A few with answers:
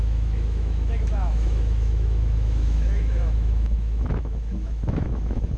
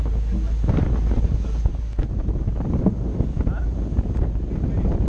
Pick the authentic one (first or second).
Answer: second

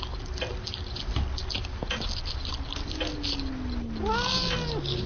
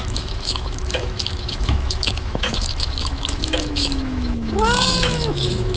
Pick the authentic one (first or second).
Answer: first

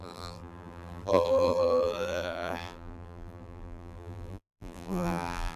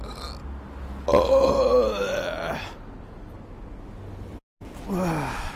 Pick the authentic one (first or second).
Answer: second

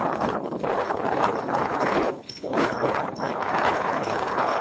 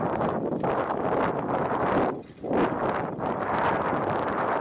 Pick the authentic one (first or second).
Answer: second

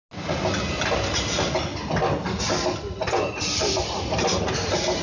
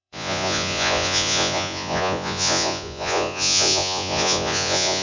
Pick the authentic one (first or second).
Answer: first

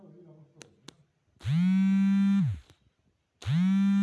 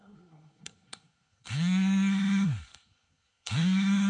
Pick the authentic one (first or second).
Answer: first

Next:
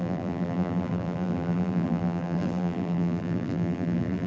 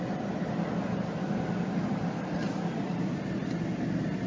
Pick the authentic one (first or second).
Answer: second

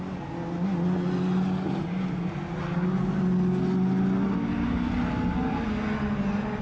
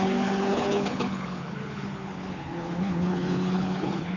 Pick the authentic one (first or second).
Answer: first